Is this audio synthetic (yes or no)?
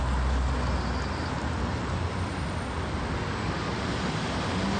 no